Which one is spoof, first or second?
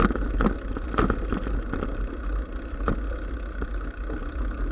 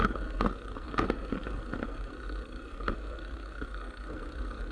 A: second